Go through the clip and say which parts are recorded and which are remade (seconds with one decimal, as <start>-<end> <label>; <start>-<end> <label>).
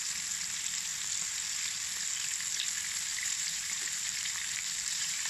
0.0-3.1 recorded; 3.1-5.3 remade